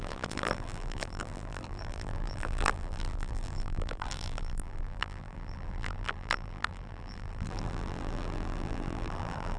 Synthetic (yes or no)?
yes